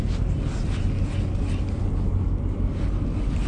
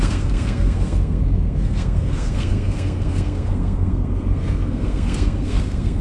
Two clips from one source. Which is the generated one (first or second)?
second